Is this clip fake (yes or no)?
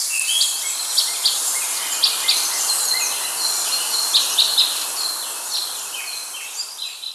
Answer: no